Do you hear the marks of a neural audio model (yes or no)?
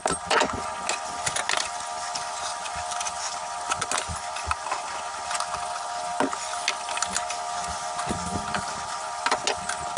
no